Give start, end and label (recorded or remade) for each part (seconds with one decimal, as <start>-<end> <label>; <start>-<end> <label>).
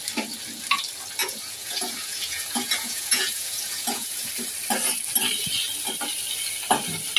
0.0-1.2 recorded; 1.2-4.3 remade; 4.3-7.2 recorded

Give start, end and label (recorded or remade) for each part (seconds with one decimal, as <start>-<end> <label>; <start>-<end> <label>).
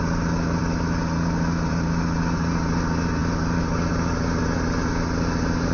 0.0-5.7 recorded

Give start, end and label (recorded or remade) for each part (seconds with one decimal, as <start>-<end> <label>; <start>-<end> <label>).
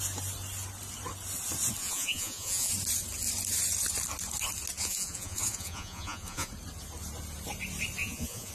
0.0-1.8 recorded; 1.8-2.7 remade; 2.7-4.8 recorded; 4.8-6.5 remade; 6.5-8.0 recorded; 8.0-8.5 remade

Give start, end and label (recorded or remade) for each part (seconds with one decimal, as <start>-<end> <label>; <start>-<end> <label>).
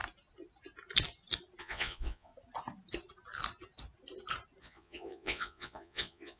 0.0-1.6 recorded; 1.6-2.3 remade; 2.3-4.6 recorded; 4.6-6.4 remade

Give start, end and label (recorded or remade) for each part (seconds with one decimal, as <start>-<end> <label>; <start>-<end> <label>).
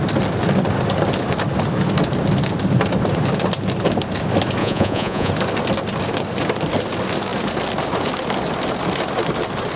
0.0-4.6 recorded; 4.6-5.3 remade; 5.3-9.8 recorded